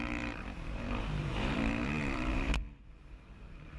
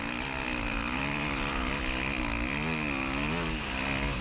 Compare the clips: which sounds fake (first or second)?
first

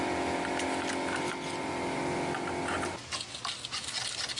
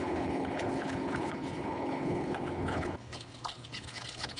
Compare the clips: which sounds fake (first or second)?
second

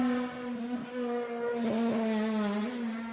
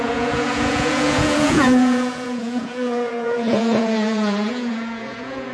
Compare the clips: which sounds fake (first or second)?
second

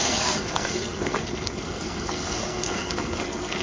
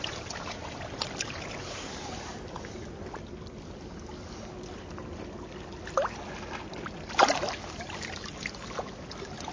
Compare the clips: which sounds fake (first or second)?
first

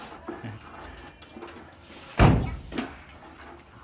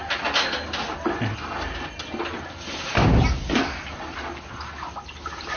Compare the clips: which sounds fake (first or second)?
second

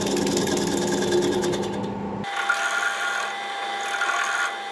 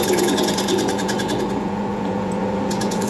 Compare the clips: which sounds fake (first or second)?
second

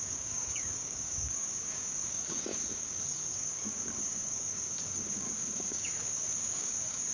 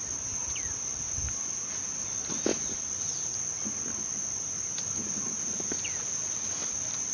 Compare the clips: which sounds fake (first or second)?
first